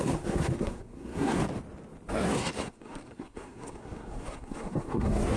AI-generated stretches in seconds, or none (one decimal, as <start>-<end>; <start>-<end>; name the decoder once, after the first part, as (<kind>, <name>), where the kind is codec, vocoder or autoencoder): 0.0-1.4 (codec, SNAC); 2.1-5.4